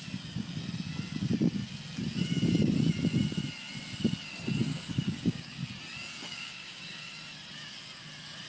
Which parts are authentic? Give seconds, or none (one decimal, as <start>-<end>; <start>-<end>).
0.0-4.7; 5.7-6.2; 7.1-8.5